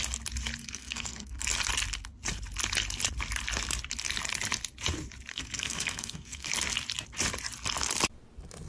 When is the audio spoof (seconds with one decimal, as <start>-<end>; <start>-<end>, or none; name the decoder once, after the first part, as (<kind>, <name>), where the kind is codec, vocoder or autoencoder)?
0.6-1.4 (codec, SNAC); 5.3-6.5